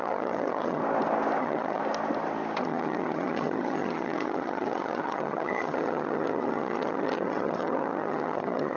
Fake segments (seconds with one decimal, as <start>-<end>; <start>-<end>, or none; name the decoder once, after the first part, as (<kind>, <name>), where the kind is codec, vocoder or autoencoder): 0.0-0.8 (vocoder, HiFi-GAN); 1.4-1.8; 2.6-8.8